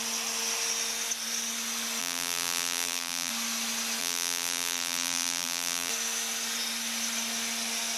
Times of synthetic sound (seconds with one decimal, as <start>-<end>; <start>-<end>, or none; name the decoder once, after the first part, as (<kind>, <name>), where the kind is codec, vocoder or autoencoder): 2.0-3.3 (vocoder, BigVGAN v2); 4.0-5.9